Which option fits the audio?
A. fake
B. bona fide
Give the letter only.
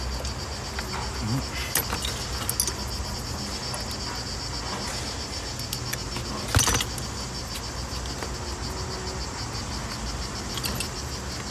B